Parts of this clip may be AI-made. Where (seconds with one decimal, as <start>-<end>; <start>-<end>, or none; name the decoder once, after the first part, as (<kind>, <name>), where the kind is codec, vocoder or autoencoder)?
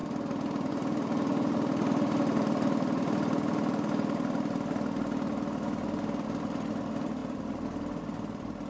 none